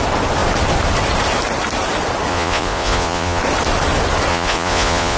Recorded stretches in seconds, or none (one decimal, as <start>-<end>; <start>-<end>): 0.0-2.3; 3.4-4.3